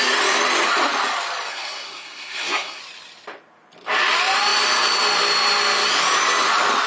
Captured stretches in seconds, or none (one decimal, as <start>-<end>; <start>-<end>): 0.0-1.5; 2.8-6.9